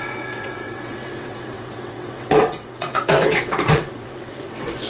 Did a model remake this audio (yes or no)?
yes